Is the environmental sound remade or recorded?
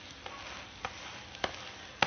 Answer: recorded